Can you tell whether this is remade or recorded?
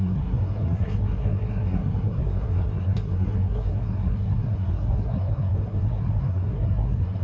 remade